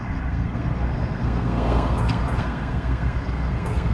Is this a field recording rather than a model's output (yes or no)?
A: no